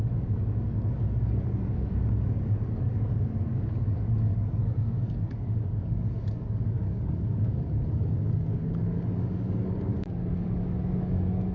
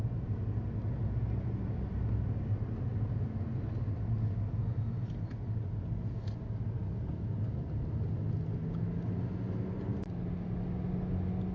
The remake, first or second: first